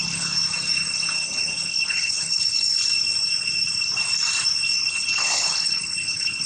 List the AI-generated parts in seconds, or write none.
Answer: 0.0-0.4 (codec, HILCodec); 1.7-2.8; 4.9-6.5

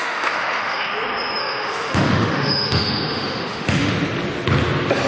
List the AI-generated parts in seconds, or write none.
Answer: 0.0-0.9 (autoencoder, DAC-VAE); 1.4-3.9

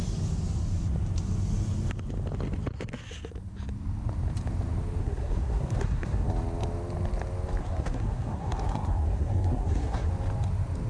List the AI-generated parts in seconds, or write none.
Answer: 5.0-6.3 (codec, SNAC); 7.6-10.1

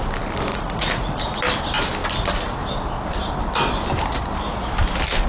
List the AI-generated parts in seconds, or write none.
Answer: 0.5-1.4 (vocoder, Vocos)

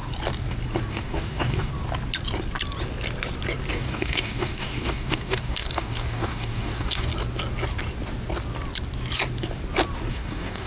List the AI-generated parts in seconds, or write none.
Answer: 0.9-1.7 (codec, DAC); 3.7-7.1; 10.1-10.7

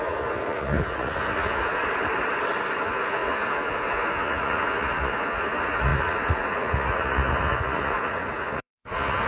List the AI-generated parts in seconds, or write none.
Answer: 0.0-1.8 (vocoder, Vocos); 2.8-9.3

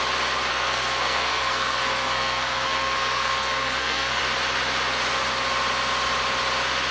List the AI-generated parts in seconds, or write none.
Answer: 0.5-4.2 (codec, SNAC)